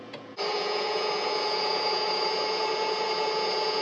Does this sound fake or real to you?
fake